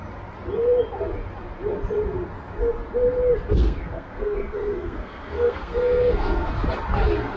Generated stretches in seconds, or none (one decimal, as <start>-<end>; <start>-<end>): 3.6-6.5